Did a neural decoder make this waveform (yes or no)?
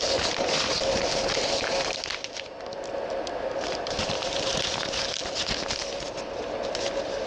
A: no